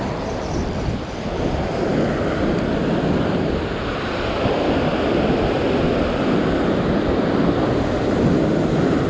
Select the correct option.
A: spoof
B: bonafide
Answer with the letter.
B